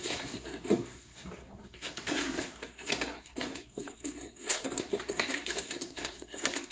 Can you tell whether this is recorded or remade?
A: remade